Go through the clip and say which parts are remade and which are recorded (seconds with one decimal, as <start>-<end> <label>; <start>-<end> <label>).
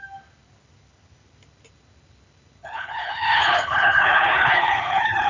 0.0-2.6 recorded; 2.6-5.3 remade